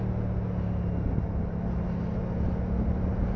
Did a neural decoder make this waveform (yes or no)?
no